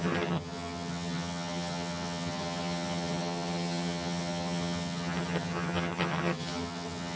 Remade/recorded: remade